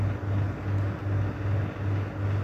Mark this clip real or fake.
real